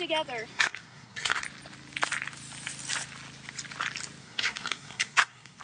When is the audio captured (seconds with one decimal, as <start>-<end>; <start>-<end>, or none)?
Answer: 0.0-0.5; 1.4-4.2